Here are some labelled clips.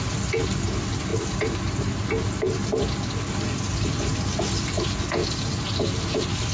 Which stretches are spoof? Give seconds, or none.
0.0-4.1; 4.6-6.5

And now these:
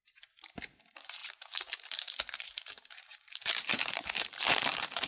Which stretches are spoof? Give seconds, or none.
0.0-5.1

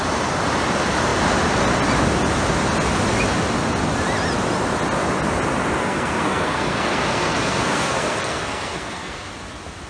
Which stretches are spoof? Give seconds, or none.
5.8-9.3

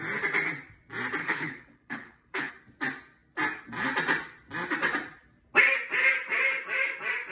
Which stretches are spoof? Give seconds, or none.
1.2-2.5